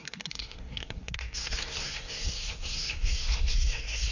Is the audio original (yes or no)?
no